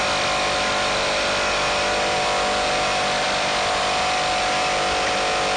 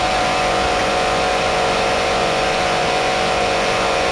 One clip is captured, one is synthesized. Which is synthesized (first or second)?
second